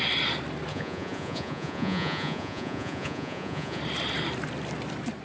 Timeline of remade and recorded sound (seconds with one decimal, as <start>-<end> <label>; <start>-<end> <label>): 0.0-0.7 recorded; 0.7-3.8 remade; 3.8-5.2 recorded